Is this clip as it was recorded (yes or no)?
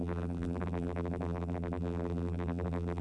no